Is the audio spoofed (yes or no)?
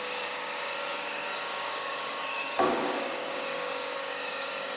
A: yes